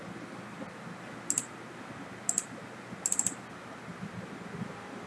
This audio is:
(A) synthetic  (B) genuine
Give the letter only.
B